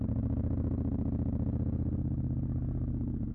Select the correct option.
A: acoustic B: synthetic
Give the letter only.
A